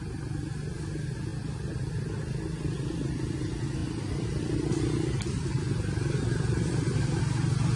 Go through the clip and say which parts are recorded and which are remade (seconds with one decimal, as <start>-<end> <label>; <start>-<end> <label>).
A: 0.0-3.8 recorded; 3.8-7.2 remade; 7.2-7.8 recorded